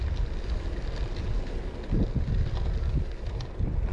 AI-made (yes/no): no